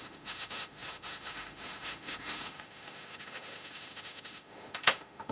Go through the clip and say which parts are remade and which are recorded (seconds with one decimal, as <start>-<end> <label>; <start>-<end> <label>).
0.0-5.3 remade